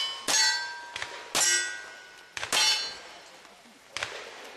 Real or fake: real